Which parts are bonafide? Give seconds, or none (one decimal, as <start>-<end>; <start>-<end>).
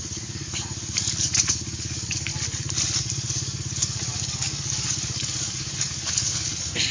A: 2.3-3.0